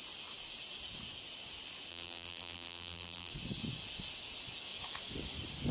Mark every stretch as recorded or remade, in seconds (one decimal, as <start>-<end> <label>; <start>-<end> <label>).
0.0-1.9 recorded; 1.9-3.3 remade; 3.3-5.7 recorded